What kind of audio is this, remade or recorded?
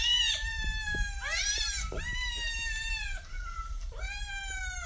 remade